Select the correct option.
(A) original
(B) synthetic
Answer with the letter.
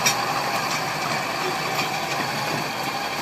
A